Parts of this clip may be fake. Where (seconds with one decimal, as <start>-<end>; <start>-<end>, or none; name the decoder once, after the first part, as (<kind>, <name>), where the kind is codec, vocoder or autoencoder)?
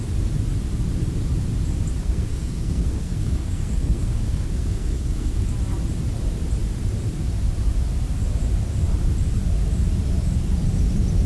2.0-5.5 (codec, SNAC)